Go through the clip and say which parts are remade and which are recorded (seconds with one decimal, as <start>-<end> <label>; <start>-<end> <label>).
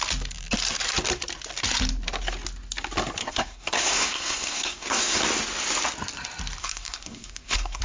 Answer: 0.0-3.2 recorded; 3.2-5.2 remade; 5.2-6.6 recorded; 6.6-7.8 remade